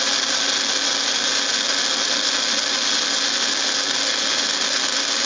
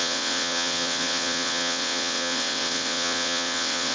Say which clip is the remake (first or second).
second